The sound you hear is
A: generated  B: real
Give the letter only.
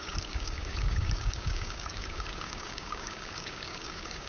A